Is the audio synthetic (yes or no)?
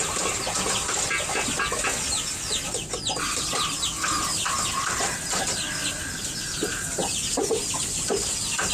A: no